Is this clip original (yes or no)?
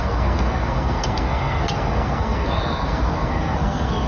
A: no